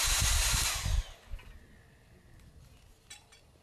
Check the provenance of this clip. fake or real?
real